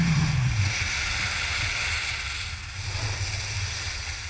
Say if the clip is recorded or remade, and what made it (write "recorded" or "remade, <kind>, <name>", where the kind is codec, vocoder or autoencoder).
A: recorded